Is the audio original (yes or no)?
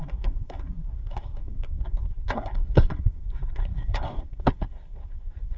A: no